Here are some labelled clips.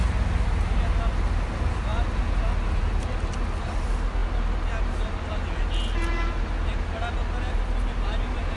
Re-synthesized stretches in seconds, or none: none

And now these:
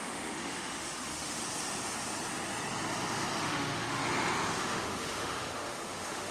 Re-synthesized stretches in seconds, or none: 0.0-1.4 (autoencoder, DAC-VAE); 3.4-4.0; 4.5-6.3

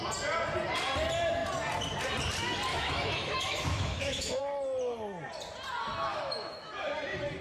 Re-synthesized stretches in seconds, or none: 2.7-4.4 (autoencoder, DAC-VAE); 6.1-6.7

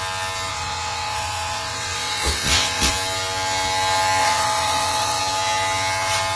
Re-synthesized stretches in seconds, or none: 0.5-2.9 (vocoder, WaveNeXt); 4.2-5.2

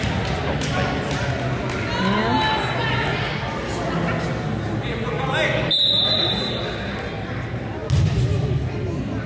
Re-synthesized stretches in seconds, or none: none

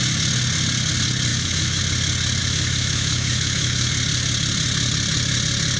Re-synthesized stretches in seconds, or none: 1.3-1.8 (autoencoder, DAC-VAE); 2.4-3.9

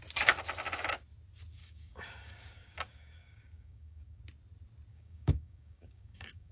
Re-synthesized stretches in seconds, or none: 1.6-4.2 (codec, DAC); 4.9-6.5

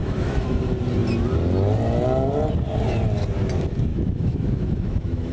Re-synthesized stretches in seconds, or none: 0.0-0.6 (autoencoder, DAC-VAE); 3.9-5.3